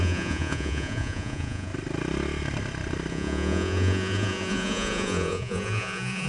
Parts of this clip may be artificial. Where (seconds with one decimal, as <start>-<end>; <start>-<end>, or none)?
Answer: 0.0-1.7; 3.1-6.3